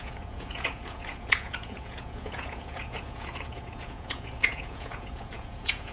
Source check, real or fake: fake